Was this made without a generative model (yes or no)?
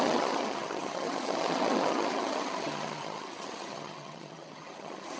no